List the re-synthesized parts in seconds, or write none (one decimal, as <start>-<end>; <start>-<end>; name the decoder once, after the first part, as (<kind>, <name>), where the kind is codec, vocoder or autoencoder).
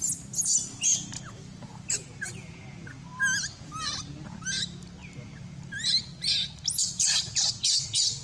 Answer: none